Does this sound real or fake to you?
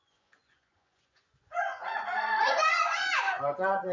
fake